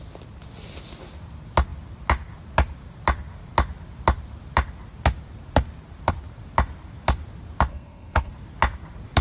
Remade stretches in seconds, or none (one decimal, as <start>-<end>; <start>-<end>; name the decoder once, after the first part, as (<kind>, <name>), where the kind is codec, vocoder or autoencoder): 7.7-8.3 (codec, SNAC)